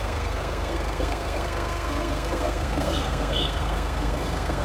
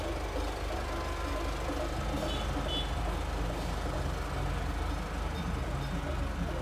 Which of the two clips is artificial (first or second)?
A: first